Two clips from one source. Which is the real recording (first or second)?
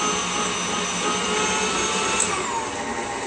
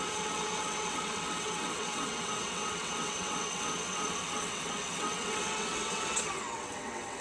first